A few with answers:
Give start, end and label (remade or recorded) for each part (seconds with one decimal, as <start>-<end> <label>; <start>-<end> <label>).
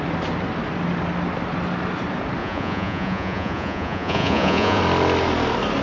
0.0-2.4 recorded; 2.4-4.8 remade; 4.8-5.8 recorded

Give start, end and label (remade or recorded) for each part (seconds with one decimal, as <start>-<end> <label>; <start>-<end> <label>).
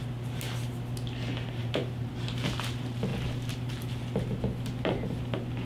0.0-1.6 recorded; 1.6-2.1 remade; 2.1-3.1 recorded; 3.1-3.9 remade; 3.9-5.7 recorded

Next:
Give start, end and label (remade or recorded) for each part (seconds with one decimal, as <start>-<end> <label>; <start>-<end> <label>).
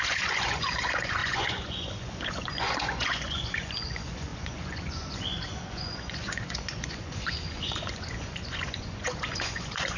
0.0-10.0 remade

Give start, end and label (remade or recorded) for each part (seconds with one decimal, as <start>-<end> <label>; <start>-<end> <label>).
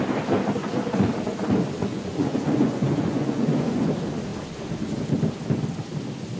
0.0-0.6 recorded; 0.6-1.1 remade; 1.1-1.8 recorded; 1.8-3.9 remade; 3.9-6.4 recorded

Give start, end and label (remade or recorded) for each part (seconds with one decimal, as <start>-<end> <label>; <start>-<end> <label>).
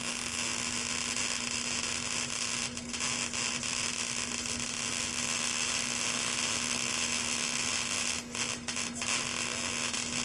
0.0-10.2 recorded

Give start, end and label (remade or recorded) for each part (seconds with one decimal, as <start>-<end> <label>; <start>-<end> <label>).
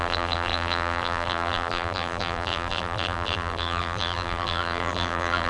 0.0-5.5 remade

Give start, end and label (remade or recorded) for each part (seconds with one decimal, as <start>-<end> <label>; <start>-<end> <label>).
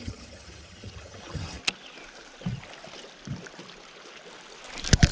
0.0-1.6 remade; 1.6-5.1 recorded